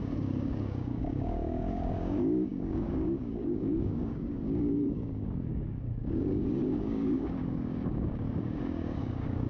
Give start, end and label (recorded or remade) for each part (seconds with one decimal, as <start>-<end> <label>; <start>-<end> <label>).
0.0-9.5 remade